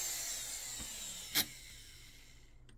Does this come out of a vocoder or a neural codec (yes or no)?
no